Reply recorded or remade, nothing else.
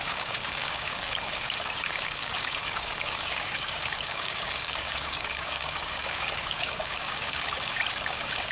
remade